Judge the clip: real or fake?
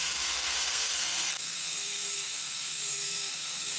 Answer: fake